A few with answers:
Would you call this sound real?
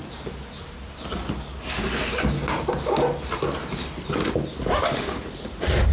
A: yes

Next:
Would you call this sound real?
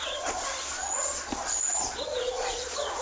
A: no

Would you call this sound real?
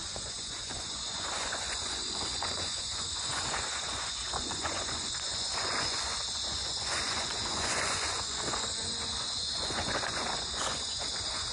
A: no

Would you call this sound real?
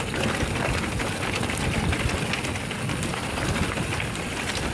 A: yes